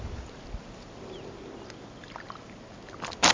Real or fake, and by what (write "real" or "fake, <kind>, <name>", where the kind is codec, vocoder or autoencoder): real